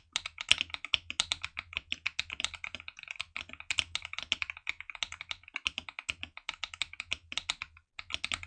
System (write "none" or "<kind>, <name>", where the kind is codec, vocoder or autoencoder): none